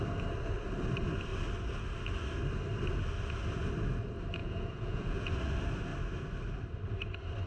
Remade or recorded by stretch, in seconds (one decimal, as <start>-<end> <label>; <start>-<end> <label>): 0.0-4.4 recorded; 4.4-5.3 remade; 5.3-7.5 recorded